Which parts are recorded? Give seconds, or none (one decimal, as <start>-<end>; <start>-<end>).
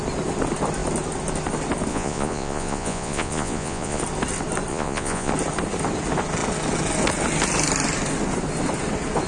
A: 0.0-1.9; 4.0-4.7; 5.3-9.3